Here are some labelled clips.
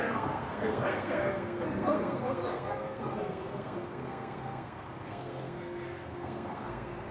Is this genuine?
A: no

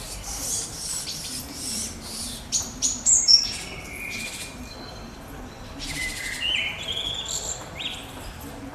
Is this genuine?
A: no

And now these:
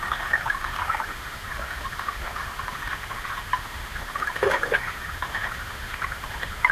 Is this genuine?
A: no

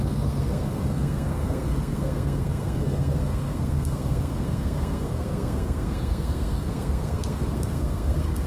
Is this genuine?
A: no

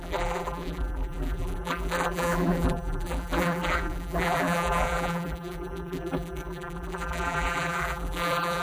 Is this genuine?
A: no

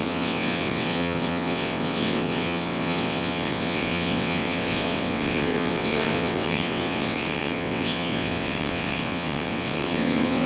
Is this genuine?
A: no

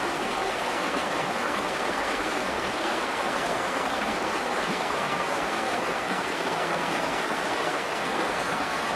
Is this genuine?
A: no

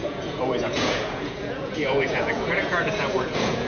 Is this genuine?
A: no